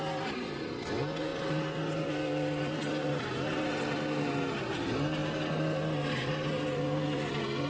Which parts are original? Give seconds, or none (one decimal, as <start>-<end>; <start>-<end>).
0.0-7.7